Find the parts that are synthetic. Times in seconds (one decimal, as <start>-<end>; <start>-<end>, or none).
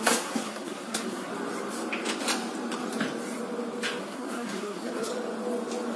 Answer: 0.0-1.3; 4.0-5.1